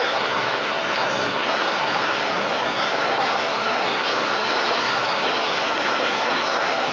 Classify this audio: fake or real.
fake